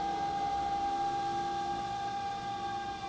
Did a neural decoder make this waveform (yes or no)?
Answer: no